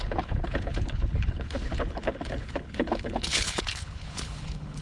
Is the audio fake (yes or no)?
yes